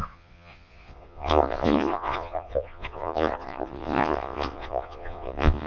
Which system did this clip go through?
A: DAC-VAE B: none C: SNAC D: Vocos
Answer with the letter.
D